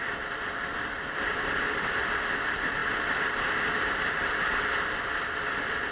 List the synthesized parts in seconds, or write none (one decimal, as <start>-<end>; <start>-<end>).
none